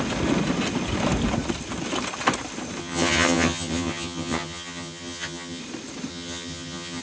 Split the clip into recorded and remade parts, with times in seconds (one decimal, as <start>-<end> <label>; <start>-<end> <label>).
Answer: 0.0-2.8 recorded; 2.8-5.6 remade; 5.6-6.1 recorded; 6.1-7.0 remade